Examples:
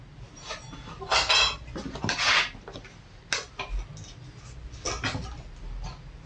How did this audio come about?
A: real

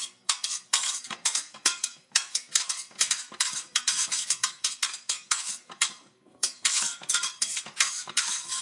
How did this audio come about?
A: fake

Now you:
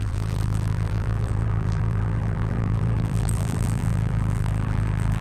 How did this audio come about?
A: fake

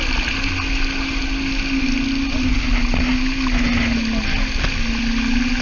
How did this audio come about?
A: real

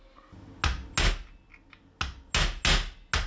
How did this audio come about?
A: real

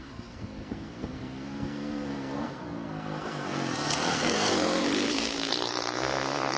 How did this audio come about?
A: fake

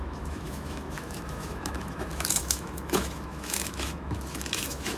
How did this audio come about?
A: fake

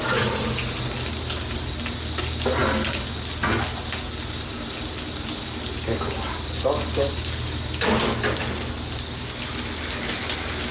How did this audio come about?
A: real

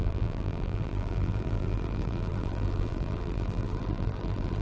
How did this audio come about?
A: fake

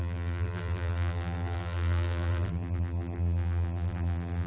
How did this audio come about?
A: fake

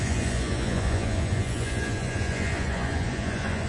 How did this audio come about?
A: fake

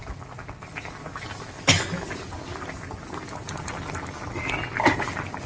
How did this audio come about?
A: real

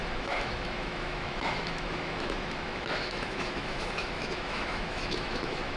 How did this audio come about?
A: fake